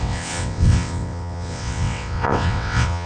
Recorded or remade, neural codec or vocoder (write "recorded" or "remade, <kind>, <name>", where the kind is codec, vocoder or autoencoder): remade, vocoder, WaveNeXt